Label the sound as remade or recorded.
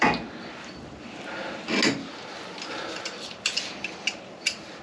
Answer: recorded